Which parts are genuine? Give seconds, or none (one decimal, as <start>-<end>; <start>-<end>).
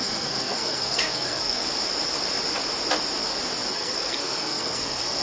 1.6-3.7